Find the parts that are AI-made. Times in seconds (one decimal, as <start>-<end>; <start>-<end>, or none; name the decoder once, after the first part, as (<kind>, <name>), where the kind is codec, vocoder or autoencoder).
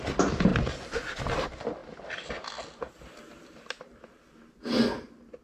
none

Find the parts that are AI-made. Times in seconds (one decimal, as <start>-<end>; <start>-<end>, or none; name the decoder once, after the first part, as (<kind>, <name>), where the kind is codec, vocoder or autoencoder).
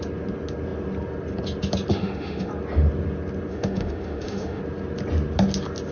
1.9-2.5 (autoencoder, DAC-VAE); 3.5-4.6